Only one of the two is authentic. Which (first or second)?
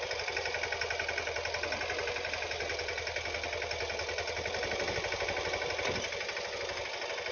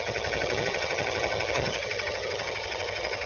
first